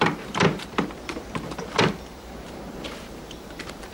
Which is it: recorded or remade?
remade